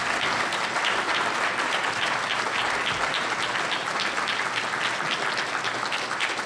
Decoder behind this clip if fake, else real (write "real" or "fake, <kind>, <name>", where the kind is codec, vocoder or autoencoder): real